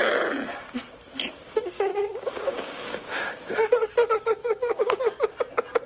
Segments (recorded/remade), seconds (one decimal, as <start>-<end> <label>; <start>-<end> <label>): 0.0-1.9 recorded; 1.9-3.3 remade; 3.3-4.4 recorded; 4.4-5.0 remade; 5.0-5.9 recorded